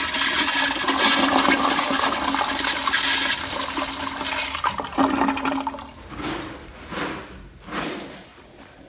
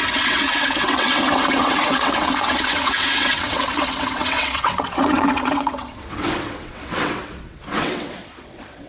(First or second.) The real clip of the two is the first